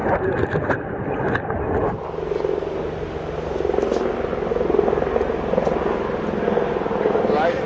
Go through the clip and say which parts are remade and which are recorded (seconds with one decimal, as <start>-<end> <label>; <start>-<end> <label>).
0.0-7.7 recorded